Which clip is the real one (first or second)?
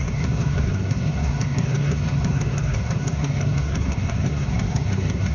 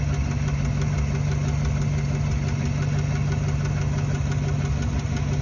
second